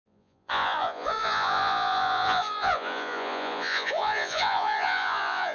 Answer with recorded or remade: remade